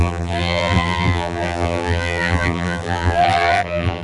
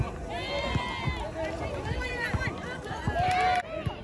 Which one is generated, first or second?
first